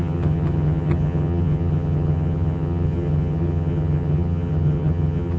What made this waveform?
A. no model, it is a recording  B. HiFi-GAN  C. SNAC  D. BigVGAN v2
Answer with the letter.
B